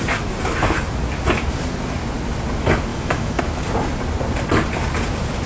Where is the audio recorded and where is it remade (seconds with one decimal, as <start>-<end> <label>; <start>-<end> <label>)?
0.0-2.9 recorded; 2.9-3.4 remade; 3.4-5.5 recorded